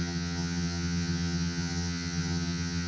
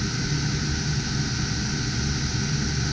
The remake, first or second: first